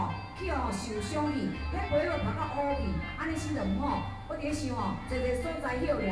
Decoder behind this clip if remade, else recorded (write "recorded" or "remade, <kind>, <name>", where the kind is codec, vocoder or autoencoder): recorded